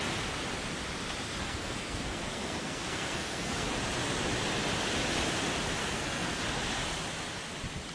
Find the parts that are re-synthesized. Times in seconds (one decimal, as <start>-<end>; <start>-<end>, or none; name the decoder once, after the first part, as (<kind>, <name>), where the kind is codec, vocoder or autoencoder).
1.4-3.7 (codec, SNAC); 5.8-6.4